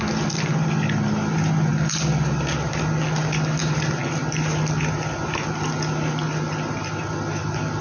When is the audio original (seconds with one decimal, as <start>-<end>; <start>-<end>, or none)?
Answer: 0.0-7.8